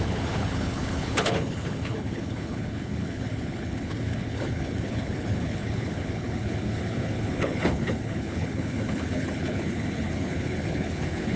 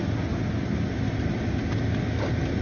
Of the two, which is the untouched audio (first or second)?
second